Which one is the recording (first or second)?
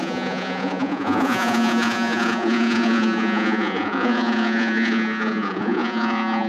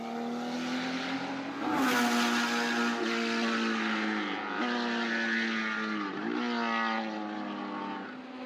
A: second